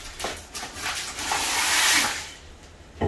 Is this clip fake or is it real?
real